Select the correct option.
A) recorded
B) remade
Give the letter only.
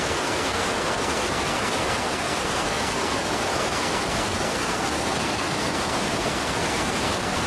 B